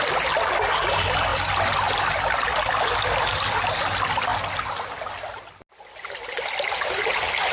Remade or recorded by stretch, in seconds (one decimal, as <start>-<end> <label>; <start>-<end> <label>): 0.0-7.5 recorded